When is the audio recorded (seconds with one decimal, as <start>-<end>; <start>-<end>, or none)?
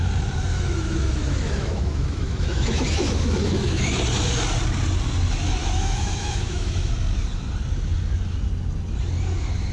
0.0-0.5; 3.8-5.6; 6.9-9.7